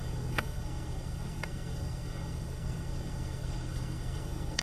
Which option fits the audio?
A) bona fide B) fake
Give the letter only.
B